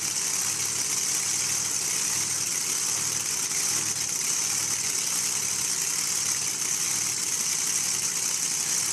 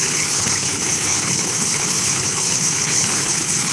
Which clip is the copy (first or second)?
second